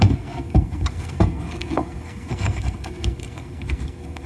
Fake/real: fake